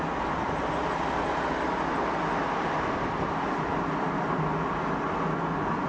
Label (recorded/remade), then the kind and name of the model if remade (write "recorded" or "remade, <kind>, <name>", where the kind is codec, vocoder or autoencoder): recorded